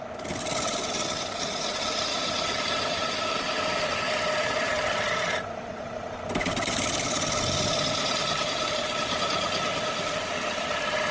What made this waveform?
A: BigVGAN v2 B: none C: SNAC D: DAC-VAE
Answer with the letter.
B